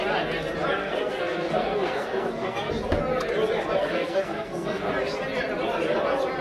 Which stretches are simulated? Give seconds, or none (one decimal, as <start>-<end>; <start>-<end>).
0.8-2.7; 3.8-4.9